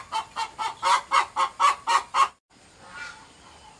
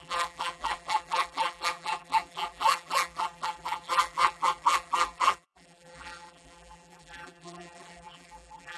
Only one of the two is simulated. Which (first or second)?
second